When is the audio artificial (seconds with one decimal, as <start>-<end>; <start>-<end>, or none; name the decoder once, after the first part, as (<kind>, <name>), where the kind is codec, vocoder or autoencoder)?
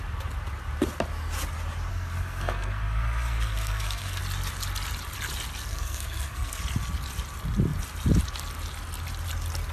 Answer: 1.9-4.2 (codec, SNAC); 5.7-6.6